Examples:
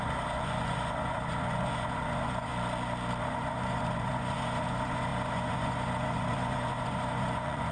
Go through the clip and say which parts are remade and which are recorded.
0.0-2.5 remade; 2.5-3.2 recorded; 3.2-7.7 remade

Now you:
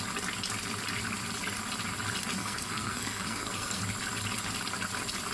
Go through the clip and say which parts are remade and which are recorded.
0.0-2.4 recorded; 2.4-3.8 remade; 3.8-5.3 recorded

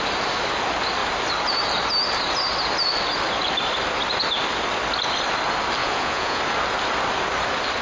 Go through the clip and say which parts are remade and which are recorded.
0.0-5.8 recorded; 5.8-6.4 remade; 6.4-7.8 recorded